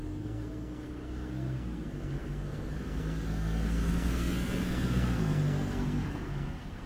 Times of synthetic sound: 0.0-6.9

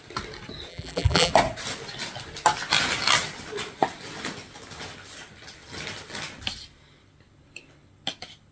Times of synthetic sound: 0.7-1.3

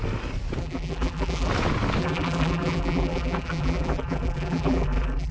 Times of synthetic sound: 0.6-1.5; 2.0-5.3

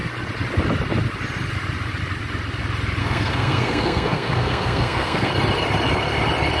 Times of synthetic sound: 3.0-5.3

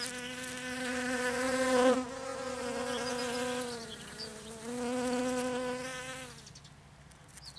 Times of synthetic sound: none